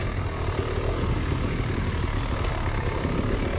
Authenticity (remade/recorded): recorded